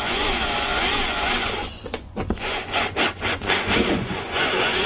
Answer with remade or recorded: remade